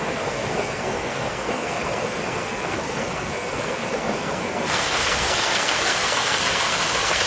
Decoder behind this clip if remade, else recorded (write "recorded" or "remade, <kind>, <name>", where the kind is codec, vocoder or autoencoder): remade, codec, SNAC